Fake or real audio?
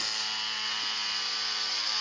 real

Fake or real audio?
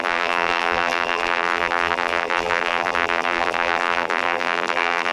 fake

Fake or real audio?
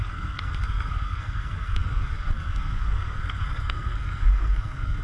fake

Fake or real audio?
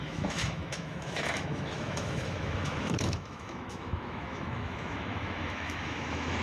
fake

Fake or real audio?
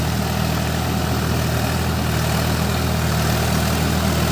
real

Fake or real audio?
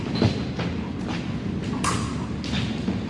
real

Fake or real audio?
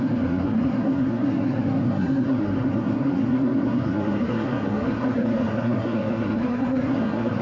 fake